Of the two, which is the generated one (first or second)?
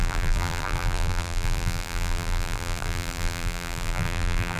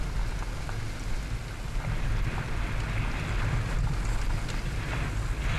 first